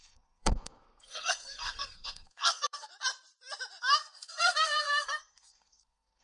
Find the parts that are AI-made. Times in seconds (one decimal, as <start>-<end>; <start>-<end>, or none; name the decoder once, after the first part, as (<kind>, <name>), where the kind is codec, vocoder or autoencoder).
0.0-2.9 (codec, SNAC); 3.8-6.2